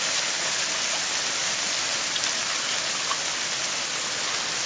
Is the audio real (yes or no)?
yes